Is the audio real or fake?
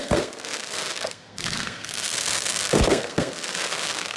fake